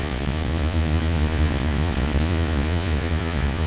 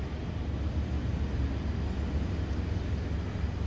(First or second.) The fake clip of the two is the first